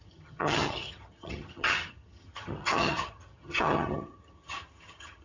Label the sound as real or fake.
fake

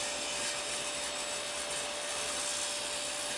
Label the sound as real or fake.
real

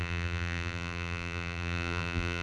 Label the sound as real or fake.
fake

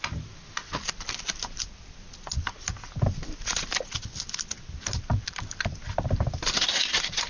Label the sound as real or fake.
real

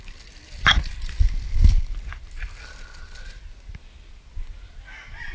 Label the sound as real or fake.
real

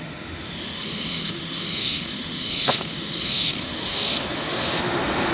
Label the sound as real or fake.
fake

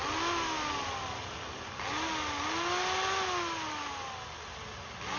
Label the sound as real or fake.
real